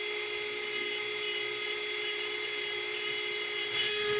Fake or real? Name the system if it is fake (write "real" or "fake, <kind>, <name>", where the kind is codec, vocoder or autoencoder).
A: real